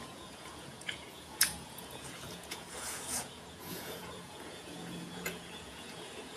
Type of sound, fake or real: fake